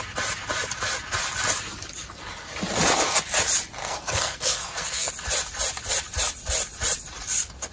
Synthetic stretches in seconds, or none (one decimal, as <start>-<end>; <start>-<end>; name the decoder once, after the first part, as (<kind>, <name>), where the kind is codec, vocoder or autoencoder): 3.8-5.1 (codec, SNAC)